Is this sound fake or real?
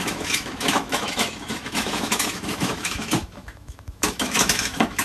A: fake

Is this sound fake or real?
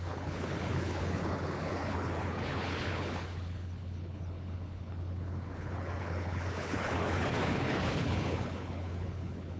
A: fake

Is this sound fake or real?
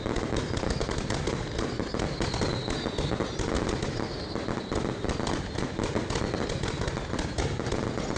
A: real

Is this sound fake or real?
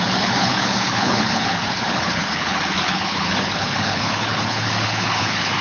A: fake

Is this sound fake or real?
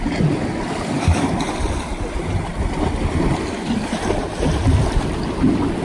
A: real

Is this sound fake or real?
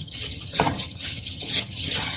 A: fake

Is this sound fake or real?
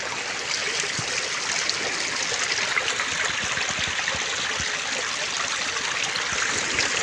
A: real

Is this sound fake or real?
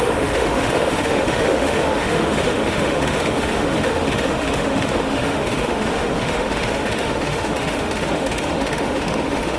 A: fake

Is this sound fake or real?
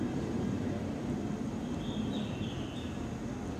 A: real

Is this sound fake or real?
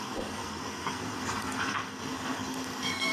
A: fake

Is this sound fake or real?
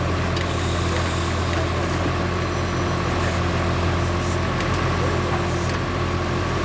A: real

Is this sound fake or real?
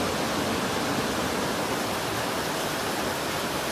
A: real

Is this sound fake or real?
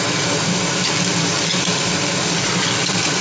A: real